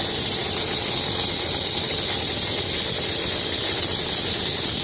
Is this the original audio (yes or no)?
yes